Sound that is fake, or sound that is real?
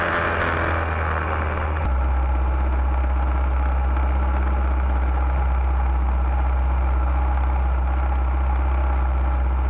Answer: real